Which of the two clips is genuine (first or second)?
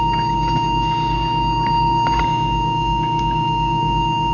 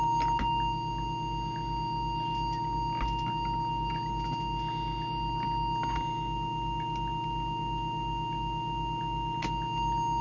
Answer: second